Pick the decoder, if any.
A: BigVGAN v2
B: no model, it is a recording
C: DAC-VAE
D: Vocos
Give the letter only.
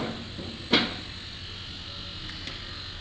B